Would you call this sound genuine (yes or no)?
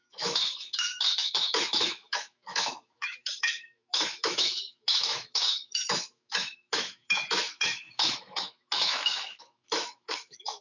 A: no